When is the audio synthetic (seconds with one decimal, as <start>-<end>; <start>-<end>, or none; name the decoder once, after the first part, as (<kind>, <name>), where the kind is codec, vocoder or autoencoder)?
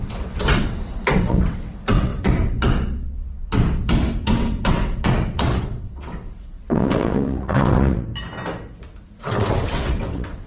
0.0-8.1 (vocoder, WaveNeXt); 9.2-10.5